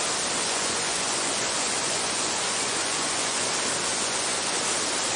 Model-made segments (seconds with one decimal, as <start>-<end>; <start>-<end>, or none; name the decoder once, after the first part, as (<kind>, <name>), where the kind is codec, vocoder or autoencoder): 0.4-3.5 (vocoder, Vocos); 3.9-4.6